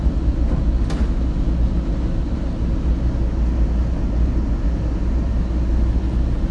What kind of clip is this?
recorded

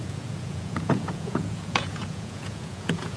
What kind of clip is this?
remade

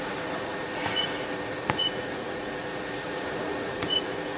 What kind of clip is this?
remade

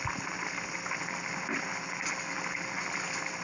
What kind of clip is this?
recorded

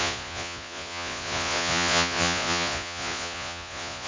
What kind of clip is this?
remade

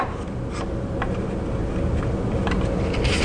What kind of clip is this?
recorded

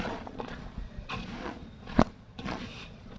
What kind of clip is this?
remade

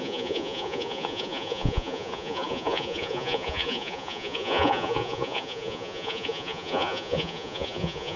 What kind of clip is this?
remade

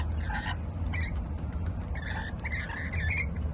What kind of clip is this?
recorded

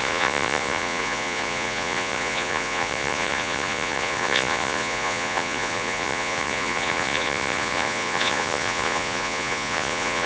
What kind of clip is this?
remade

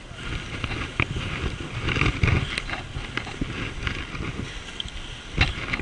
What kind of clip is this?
recorded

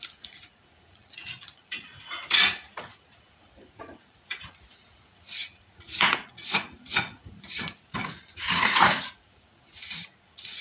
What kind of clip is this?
remade